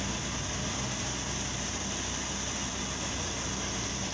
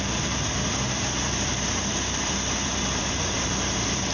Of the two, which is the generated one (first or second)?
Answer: second